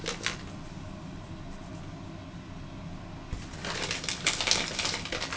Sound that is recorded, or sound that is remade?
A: recorded